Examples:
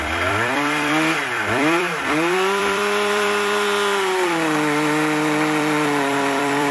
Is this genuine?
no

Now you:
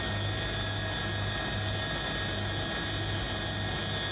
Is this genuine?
yes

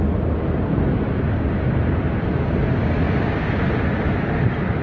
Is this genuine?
yes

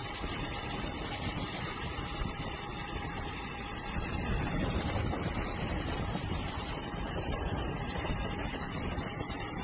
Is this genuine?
no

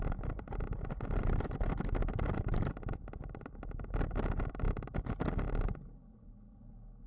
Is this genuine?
yes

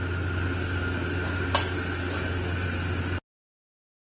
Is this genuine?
yes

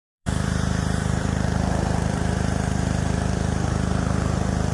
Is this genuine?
no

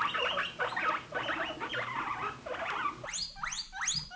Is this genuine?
yes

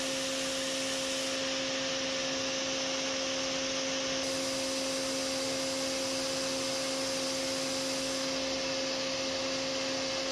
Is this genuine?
yes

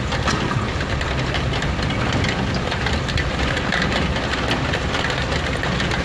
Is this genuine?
yes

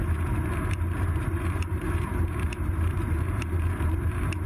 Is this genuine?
no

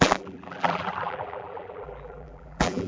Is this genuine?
no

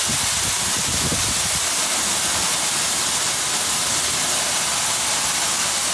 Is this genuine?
yes